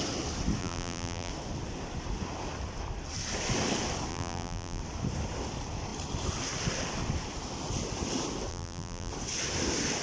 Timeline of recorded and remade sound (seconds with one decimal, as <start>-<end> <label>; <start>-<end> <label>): 0.0-0.6 recorded; 0.6-1.3 remade; 1.3-4.1 recorded; 4.1-4.8 remade; 4.8-8.5 recorded; 8.5-9.1 remade; 9.1-10.0 recorded